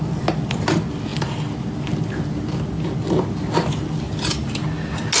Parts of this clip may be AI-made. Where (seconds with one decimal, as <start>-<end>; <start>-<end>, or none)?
none